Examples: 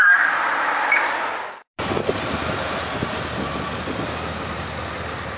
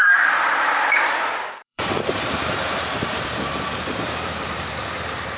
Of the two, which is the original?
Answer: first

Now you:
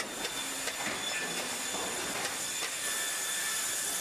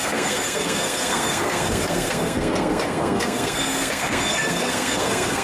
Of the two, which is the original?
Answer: first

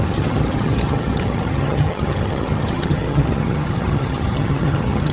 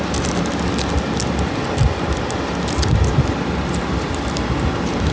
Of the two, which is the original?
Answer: second